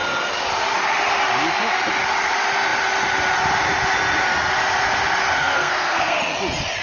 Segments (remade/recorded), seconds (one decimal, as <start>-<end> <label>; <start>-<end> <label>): 0.0-5.2 recorded; 5.2-6.2 remade; 6.2-6.8 recorded